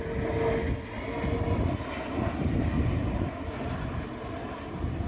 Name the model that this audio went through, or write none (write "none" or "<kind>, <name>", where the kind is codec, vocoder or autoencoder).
none